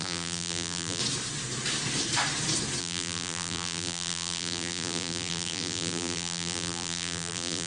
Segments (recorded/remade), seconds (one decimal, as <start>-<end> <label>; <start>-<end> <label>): 0.0-1.0 remade; 1.0-2.8 recorded; 2.8-7.7 remade